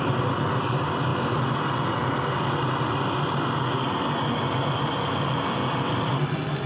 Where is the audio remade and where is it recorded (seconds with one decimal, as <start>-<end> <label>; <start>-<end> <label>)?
0.0-6.7 recorded